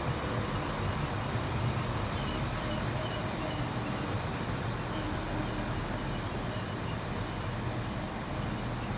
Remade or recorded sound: recorded